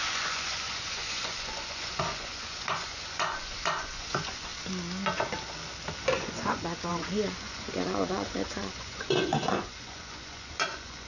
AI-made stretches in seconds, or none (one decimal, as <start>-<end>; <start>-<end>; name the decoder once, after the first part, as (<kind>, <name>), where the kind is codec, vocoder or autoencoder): 0.0-4.5 (vocoder, Vocos); 6.0-11.1